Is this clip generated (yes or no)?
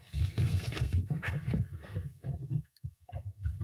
yes